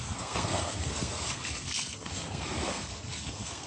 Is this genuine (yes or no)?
no